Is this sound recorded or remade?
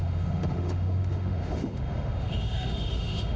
remade